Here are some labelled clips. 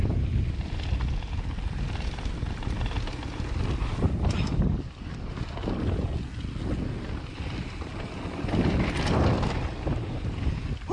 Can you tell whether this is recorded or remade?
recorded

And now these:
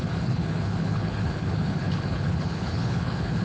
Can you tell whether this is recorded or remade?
remade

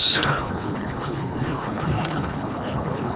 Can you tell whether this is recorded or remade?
remade